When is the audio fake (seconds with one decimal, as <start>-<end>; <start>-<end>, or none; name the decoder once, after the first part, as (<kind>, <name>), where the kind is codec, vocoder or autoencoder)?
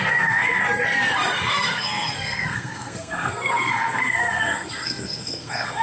0.0-0.6 (codec, SNAC); 1.5-5.8